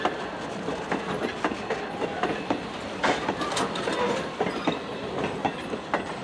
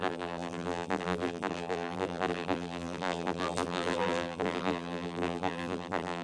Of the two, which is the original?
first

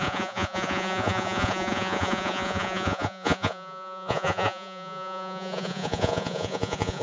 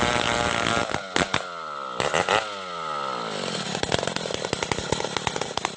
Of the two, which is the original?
second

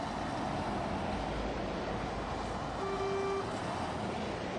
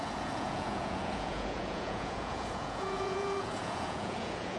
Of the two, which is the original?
first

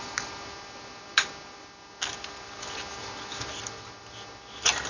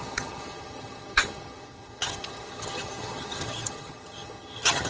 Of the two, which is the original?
first